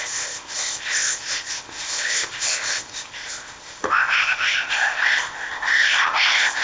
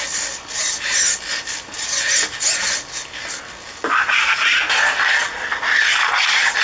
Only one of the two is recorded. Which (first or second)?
second